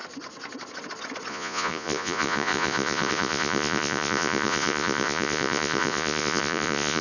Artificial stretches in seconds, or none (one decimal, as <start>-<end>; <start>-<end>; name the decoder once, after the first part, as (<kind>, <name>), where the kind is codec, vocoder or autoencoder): 1.3-7.0 (vocoder, Vocos)